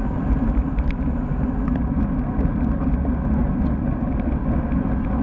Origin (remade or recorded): recorded